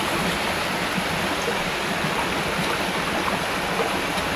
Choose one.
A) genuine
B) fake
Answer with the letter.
A